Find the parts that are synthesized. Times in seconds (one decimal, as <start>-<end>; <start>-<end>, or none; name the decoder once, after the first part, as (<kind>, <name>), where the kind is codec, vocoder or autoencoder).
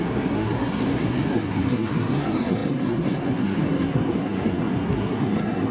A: 0.0-5.7 (codec, SNAC)